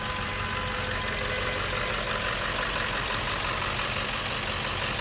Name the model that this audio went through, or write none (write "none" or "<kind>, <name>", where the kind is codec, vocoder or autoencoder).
none